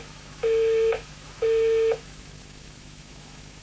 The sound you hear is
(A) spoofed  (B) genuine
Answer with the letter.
A